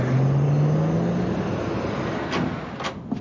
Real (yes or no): yes